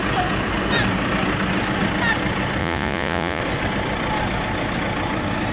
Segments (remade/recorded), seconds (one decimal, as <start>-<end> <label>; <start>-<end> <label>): 0.0-2.6 recorded; 2.6-3.4 remade; 3.4-5.5 recorded